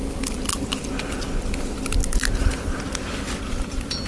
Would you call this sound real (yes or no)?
yes